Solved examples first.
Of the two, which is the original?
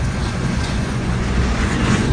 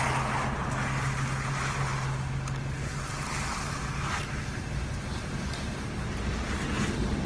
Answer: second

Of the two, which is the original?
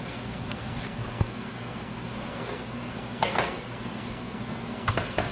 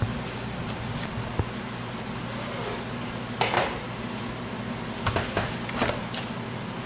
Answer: second